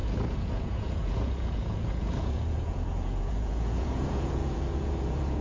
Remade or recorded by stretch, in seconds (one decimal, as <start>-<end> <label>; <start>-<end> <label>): 0.0-5.4 remade